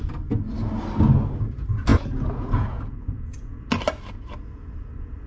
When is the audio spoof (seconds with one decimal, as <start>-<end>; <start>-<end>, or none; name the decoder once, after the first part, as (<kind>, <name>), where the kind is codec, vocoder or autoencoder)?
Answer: 1.9-3.5 (vocoder, Vocos)